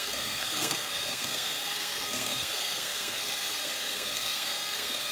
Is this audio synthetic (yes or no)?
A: yes